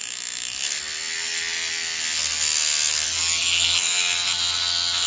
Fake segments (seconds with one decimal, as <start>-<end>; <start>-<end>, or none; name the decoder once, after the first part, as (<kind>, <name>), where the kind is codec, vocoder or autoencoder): none